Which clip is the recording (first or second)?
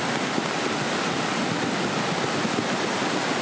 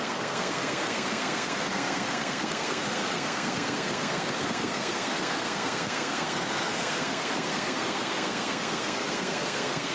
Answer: first